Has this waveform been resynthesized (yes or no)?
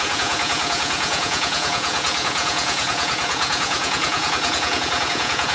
yes